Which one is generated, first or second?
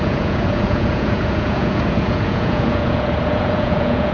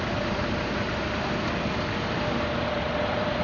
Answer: first